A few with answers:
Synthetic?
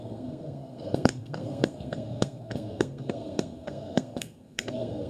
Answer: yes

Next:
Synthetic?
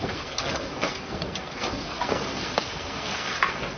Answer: yes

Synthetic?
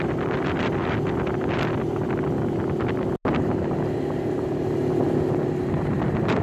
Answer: no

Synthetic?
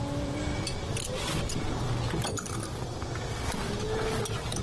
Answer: no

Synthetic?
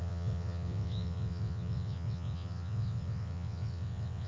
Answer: yes